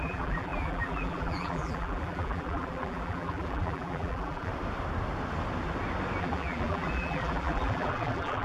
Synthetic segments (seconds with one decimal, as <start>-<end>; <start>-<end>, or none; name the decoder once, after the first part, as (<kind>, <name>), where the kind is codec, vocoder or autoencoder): 0.0-4.5 (vocoder, BigVGAN v2); 6.2-8.4